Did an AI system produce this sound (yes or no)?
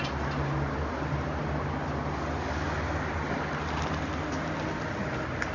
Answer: no